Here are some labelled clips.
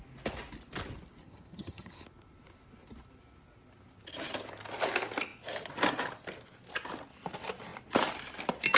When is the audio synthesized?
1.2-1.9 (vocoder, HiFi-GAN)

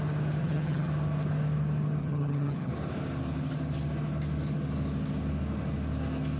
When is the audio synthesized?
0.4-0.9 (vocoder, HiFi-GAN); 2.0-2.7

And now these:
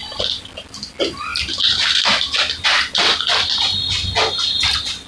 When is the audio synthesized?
0.0-0.9 (vocoder, BigVGAN v2); 1.3-3.4

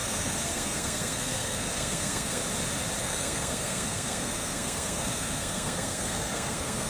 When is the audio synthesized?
0.0-2.4 (codec, SNAC); 3.0-6.9

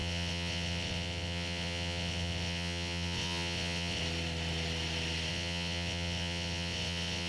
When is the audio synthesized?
0.0-4.0 (vocoder, WaveNeXt); 5.3-7.3